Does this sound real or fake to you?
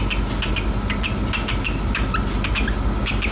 real